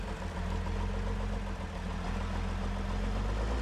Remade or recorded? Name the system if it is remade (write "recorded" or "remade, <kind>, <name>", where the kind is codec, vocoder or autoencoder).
recorded